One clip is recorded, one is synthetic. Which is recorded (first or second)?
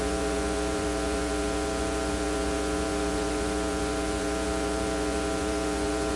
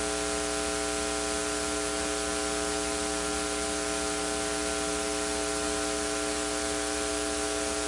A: second